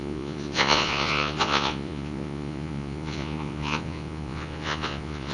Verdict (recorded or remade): remade